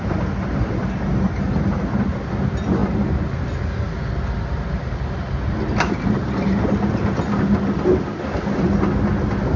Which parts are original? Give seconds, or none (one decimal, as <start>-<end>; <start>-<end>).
0.0-9.6